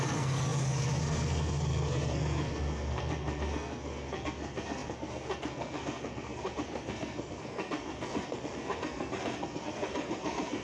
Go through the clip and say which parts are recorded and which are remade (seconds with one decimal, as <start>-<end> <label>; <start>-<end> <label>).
0.0-10.6 remade